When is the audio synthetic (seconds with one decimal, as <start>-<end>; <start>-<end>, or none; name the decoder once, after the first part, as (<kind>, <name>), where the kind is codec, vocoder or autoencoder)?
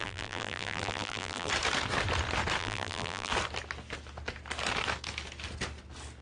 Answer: 0.0-1.5 (vocoder, BigVGAN v2); 2.6-3.3